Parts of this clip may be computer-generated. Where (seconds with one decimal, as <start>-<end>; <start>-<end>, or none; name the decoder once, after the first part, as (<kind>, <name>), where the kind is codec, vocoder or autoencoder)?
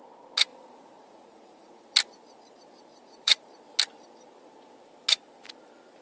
0.5-1.8 (vocoder, Vocos); 2.9-3.4